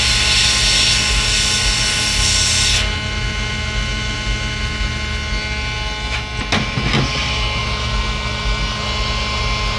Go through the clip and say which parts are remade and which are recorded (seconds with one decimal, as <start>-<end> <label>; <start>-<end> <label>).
0.0-9.8 recorded